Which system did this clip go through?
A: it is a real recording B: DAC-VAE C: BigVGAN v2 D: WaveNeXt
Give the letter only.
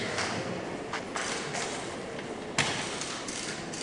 A